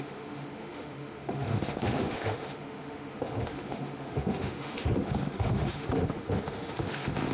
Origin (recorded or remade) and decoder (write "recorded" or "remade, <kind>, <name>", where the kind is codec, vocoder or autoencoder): remade, autoencoder, DAC-VAE